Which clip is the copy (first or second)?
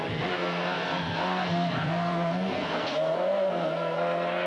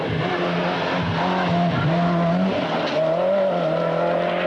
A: first